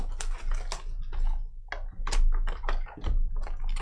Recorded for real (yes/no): yes